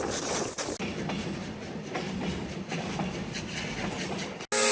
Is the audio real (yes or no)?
yes